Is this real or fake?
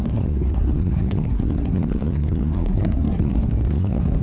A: fake